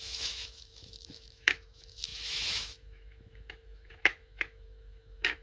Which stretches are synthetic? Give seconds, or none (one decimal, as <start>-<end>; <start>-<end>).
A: 0.0-5.4